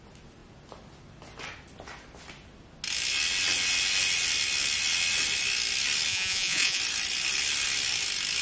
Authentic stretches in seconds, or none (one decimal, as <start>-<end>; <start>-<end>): 0.0-6.1; 6.8-8.4